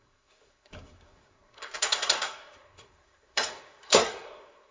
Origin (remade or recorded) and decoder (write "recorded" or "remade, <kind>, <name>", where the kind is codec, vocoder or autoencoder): remade, codec, SNAC